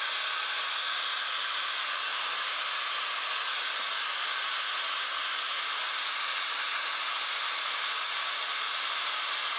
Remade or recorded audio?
recorded